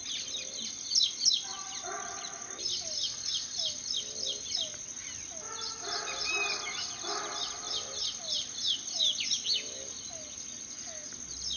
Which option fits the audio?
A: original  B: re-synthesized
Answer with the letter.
A